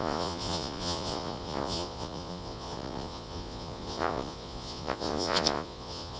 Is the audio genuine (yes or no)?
no